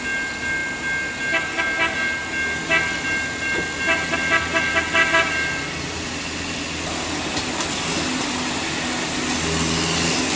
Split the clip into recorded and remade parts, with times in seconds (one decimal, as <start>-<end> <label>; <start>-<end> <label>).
0.0-10.4 recorded